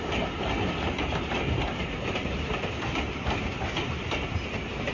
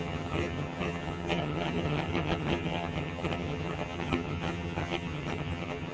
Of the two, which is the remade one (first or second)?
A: second